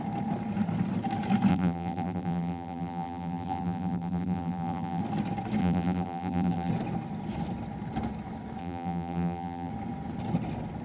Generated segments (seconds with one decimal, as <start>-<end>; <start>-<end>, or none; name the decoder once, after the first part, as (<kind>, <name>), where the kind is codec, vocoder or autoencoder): 1.5-5.0 (vocoder, BigVGAN v2); 5.6-6.7; 8.6-9.7